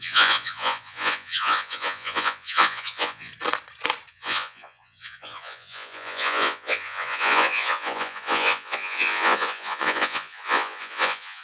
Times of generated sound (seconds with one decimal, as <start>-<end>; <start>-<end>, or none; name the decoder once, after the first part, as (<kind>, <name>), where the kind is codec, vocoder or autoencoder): 0.0-3.3 (vocoder, Vocos); 4.1-11.4